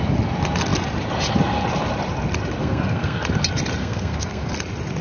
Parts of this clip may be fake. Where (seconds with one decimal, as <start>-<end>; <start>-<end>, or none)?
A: 2.6-3.2; 3.8-4.5